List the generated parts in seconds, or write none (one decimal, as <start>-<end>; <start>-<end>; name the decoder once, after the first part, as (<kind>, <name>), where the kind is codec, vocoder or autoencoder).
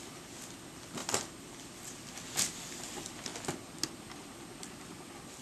none